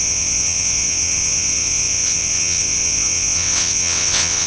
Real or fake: fake